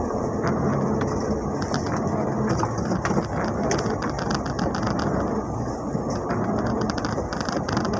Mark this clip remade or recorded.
recorded